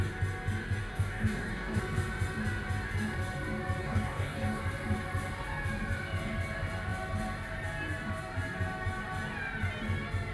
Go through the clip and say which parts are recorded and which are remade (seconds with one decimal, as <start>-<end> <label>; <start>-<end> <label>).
0.0-0.8 recorded; 0.8-1.8 remade; 1.8-3.8 recorded; 3.8-4.6 remade; 4.6-10.3 recorded